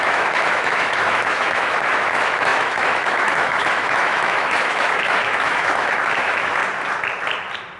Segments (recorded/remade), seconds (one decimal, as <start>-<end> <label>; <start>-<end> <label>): 0.0-6.6 remade; 6.6-7.8 recorded